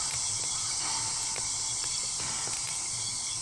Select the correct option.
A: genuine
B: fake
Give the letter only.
A